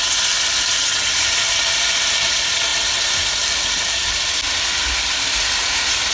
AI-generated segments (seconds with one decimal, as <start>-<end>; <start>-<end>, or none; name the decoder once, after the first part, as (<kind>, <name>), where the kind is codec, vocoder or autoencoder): none